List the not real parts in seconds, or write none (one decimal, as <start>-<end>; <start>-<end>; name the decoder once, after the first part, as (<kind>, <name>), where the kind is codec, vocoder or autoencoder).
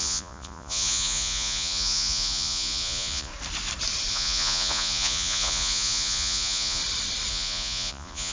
0.0-3.3 (vocoder, Vocos); 4.1-6.8; 7.3-8.3